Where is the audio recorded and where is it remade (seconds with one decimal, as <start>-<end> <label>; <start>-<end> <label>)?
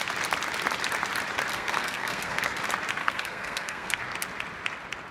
0.0-1.5 recorded; 1.5-2.6 remade; 2.6-3.0 recorded; 3.0-4.0 remade; 4.0-5.1 recorded